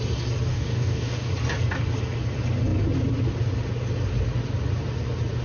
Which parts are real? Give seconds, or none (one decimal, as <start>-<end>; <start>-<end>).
0.0-0.5; 1.3-5.4